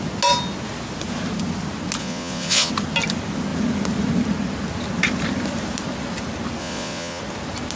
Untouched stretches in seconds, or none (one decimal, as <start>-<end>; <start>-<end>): 0.0-2.0; 2.7-6.6; 7.2-7.8